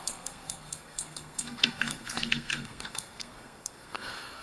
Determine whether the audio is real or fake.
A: fake